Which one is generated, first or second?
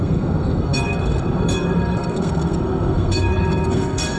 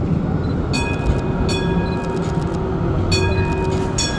first